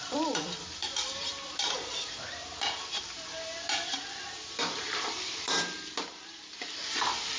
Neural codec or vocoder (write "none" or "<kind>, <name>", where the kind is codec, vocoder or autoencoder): vocoder, BigVGAN v2